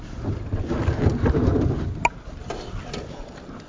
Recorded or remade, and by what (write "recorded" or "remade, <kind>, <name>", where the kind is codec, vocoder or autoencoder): recorded